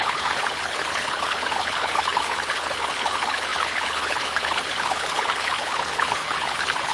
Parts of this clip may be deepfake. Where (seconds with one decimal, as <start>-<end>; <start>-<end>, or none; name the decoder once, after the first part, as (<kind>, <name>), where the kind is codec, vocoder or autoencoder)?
0.0-6.9 (codec, HILCodec)